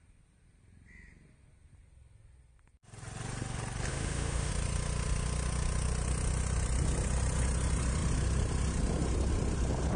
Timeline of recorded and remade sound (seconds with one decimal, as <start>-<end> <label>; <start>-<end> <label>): 0.0-3.9 recorded; 3.9-4.5 remade; 4.5-10.0 recorded